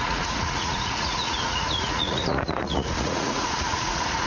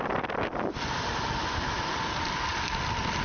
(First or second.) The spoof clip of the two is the first